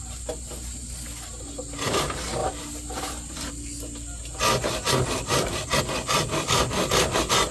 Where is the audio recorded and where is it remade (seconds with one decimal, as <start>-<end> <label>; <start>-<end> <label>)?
0.0-2.4 recorded; 2.4-5.8 remade; 5.8-7.5 recorded